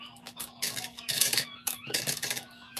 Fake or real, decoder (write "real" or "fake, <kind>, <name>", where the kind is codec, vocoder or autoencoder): fake, codec, DAC